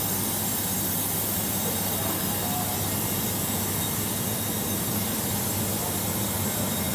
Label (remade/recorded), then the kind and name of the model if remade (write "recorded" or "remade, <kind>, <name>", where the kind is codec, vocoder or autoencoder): recorded